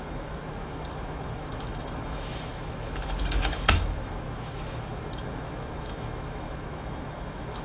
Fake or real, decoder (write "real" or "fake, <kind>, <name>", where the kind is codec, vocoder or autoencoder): fake, autoencoder, DAC-VAE